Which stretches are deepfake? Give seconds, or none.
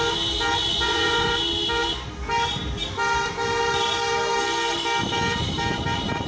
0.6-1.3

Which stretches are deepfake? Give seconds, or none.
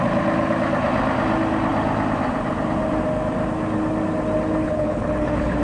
4.6-5.6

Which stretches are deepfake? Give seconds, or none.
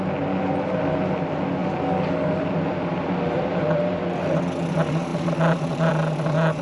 1.6-4.3; 5.1-5.9